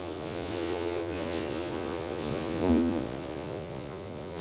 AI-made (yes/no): yes